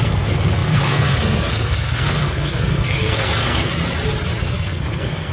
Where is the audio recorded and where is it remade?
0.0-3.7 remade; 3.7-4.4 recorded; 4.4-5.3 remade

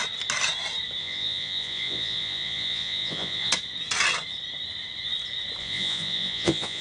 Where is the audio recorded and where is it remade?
0.0-1.0 recorded; 1.0-3.5 remade; 3.5-5.6 recorded; 5.6-6.8 remade

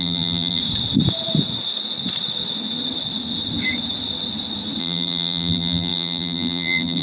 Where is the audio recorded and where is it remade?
0.0-0.6 remade; 0.6-4.8 recorded; 4.8-7.0 remade